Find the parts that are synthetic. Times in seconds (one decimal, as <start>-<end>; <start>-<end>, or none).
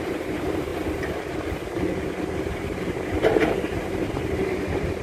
0.0-0.7; 2.5-5.0